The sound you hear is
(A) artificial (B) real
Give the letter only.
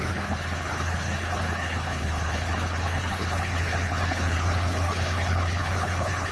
A